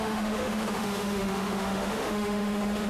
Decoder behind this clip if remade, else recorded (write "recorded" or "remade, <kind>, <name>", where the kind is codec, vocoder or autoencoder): remade, autoencoder, DAC-VAE